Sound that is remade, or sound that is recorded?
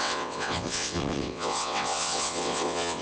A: remade